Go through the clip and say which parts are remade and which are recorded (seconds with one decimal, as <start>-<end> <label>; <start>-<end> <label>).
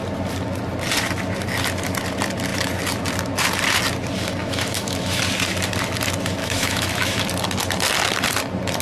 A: 0.0-4.4 recorded; 4.4-5.2 remade; 5.2-6.4 recorded; 6.4-7.2 remade; 7.2-8.8 recorded